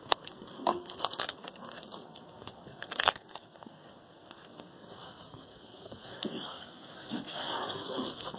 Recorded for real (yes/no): no